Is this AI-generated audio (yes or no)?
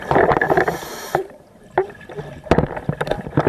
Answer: no